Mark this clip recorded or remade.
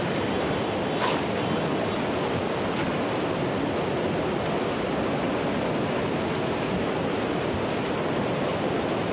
recorded